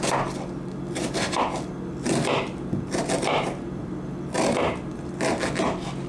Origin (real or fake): real